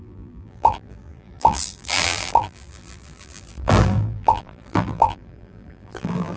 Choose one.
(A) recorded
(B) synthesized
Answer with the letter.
B